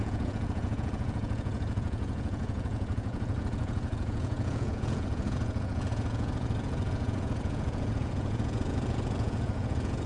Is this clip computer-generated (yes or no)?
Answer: yes